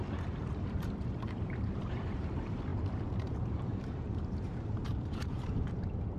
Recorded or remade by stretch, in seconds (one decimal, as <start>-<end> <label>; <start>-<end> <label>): 0.0-2.7 remade; 2.7-3.4 recorded; 3.4-6.2 remade